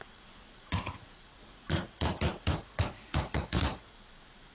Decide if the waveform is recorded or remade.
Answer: remade